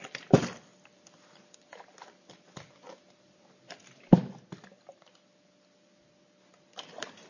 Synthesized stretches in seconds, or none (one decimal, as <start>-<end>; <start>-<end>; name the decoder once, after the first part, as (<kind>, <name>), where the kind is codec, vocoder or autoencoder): none

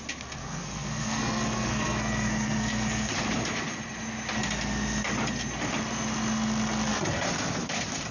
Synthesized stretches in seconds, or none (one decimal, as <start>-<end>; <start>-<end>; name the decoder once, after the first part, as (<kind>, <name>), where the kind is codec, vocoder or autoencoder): 0.4-3.1 (codec, SNAC)